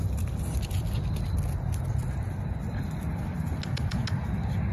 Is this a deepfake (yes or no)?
no